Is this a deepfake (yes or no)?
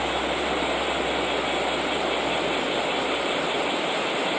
no